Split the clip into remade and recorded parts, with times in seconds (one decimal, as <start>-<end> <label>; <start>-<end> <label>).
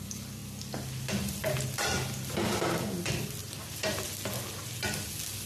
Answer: 0.0-5.5 recorded